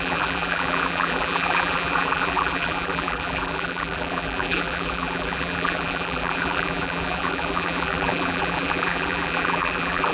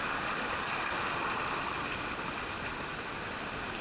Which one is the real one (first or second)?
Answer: second